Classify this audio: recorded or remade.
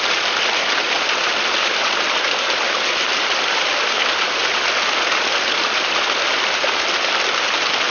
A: recorded